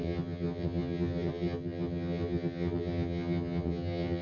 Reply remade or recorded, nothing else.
remade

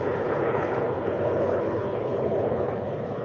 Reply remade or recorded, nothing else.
remade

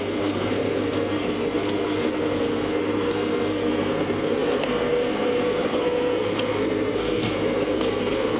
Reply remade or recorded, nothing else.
remade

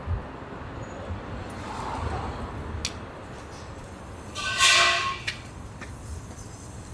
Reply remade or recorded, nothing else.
recorded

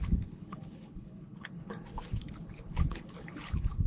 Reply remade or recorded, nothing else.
remade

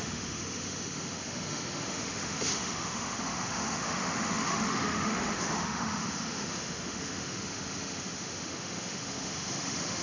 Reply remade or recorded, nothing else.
remade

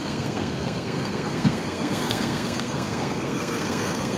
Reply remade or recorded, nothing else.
remade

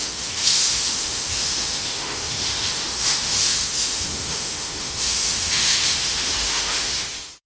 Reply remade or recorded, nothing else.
remade